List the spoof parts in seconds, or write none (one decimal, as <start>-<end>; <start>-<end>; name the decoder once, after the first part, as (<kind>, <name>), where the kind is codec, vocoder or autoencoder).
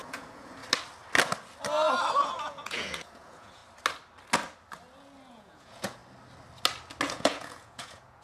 0.0-0.6 (vocoder, Vocos); 2.4-3.6; 5.3-6.0; 7.1-8.2